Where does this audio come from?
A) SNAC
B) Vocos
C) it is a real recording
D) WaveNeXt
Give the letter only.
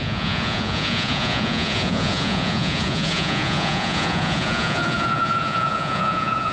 B